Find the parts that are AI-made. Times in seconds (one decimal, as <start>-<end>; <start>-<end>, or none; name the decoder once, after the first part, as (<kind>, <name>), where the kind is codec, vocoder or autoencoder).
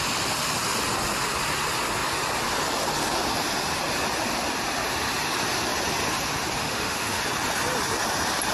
6.6-7.2 (autoencoder, DAC-VAE)